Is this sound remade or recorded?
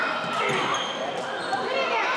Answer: recorded